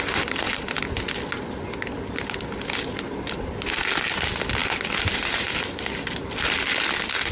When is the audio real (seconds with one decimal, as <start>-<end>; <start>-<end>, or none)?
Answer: 0.0-7.3